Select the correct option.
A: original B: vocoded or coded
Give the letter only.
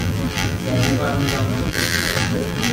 B